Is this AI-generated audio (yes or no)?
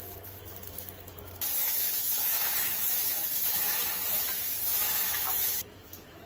yes